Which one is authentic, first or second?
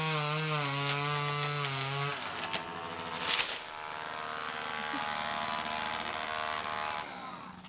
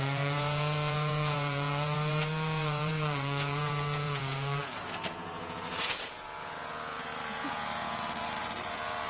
first